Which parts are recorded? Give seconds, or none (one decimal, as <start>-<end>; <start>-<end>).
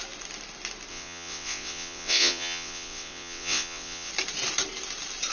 0.0-0.9; 4.1-5.3